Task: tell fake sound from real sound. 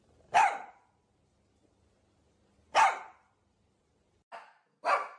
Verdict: real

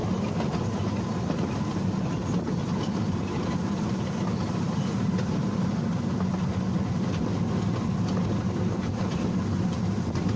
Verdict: real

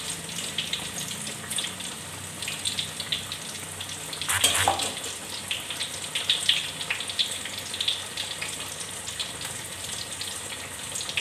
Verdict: real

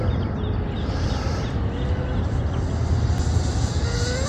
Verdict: real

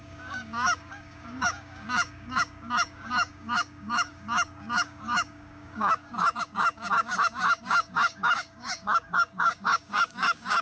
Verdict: fake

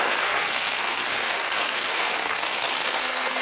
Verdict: fake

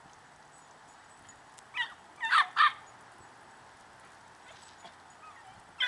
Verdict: real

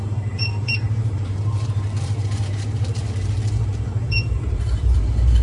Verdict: fake